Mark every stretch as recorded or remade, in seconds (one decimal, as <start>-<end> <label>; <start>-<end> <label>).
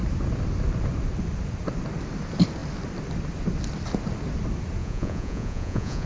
0.0-4.8 recorded; 4.8-6.1 remade